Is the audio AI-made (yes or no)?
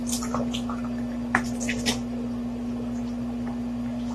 no